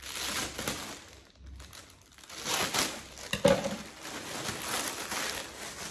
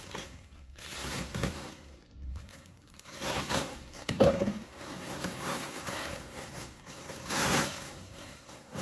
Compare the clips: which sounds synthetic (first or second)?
second